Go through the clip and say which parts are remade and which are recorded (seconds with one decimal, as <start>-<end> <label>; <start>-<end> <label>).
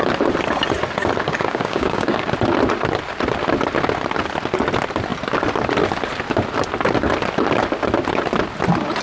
0.0-1.2 recorded; 1.2-2.3 remade; 2.3-9.0 recorded